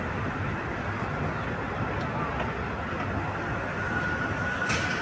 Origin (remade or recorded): recorded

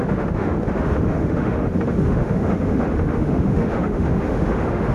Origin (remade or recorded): remade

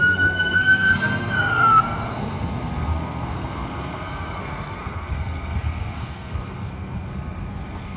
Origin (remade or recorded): remade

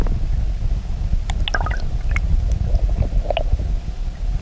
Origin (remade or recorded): recorded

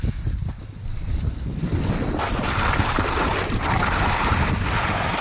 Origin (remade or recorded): recorded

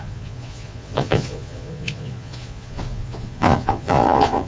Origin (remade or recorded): remade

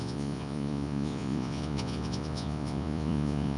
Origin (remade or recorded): remade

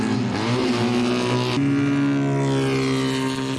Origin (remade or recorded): recorded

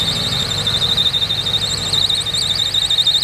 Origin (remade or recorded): recorded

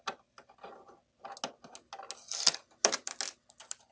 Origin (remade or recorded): recorded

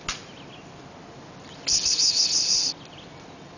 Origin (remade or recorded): recorded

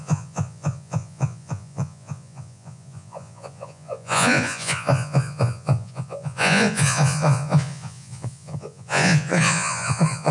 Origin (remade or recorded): remade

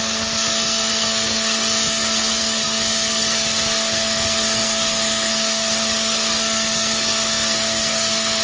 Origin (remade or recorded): remade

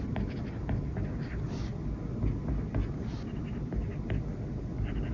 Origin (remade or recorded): recorded